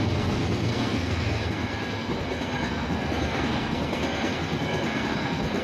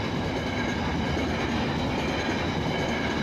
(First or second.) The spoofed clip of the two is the first